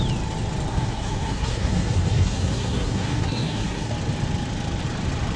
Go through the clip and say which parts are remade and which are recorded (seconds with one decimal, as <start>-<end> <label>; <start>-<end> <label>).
0.0-0.7 recorded; 0.7-3.9 remade; 3.9-5.4 recorded